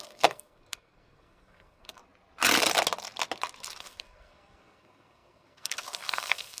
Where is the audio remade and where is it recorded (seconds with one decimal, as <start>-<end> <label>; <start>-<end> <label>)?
0.0-2.0 remade; 2.0-3.8 recorded; 3.8-6.6 remade